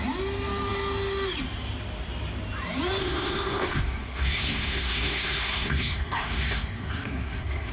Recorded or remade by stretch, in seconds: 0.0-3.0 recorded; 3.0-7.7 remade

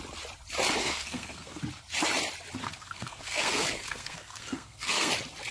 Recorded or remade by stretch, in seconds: 0.0-0.8 recorded; 0.8-1.6 remade; 1.6-2.6 recorded; 2.6-5.1 remade; 5.1-5.5 recorded

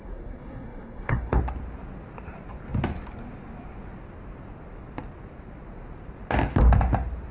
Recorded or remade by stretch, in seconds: 0.0-1.4 remade; 1.4-7.3 recorded

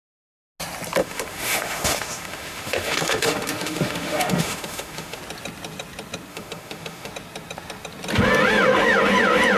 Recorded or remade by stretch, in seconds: 0.0-1.0 recorded; 1.0-5.2 remade; 5.2-6.3 recorded; 6.3-7.1 remade; 7.1-9.6 recorded

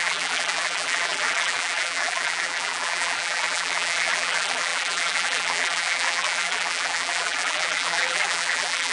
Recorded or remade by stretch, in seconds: 0.0-8.9 remade

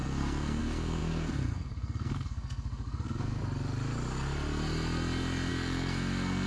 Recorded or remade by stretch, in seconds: 0.0-3.4 remade; 3.4-5.5 recorded; 5.5-6.5 remade